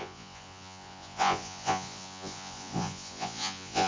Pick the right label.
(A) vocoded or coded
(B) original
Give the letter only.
A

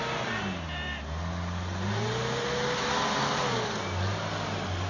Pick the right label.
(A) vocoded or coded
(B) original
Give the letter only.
B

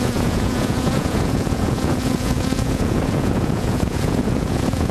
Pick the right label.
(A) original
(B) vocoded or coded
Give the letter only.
B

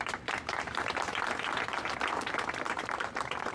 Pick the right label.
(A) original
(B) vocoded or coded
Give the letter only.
B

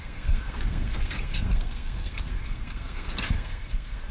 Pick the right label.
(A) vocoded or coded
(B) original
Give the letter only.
A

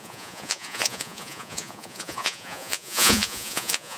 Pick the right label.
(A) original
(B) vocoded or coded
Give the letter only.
B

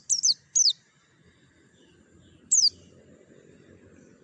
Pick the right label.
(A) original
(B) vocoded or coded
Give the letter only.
A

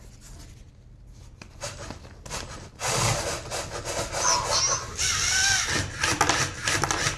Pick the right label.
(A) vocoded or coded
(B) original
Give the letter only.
B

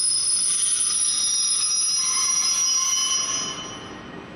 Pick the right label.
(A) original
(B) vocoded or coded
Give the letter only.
A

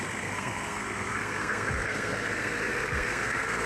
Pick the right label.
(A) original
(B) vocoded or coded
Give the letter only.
B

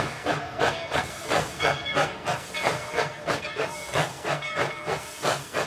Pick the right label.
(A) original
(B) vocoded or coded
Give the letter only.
B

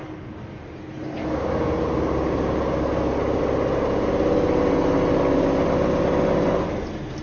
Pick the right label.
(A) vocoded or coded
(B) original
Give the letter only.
B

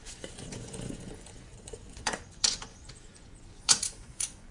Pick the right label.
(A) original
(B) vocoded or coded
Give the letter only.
B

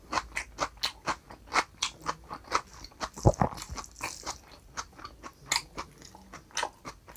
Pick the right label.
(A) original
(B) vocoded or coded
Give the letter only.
A